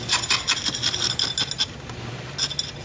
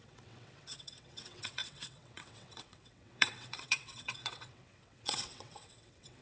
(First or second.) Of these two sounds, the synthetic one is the second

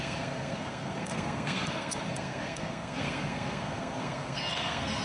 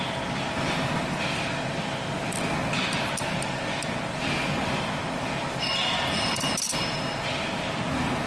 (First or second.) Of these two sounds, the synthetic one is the first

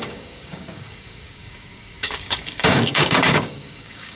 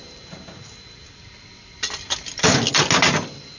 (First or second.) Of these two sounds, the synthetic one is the first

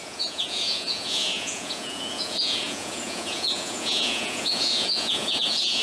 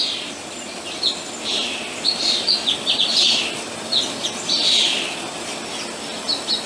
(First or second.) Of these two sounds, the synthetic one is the first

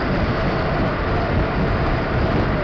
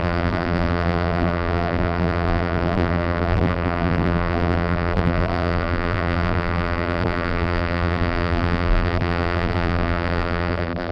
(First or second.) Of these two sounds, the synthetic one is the second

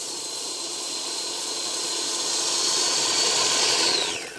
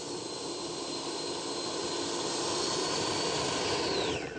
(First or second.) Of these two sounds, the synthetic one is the first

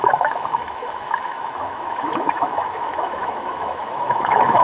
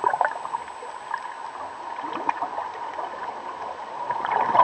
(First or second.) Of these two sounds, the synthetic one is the first